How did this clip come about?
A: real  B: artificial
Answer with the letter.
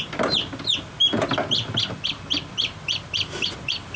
A